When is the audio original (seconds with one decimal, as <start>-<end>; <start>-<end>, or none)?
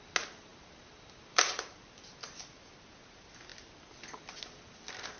0.0-5.2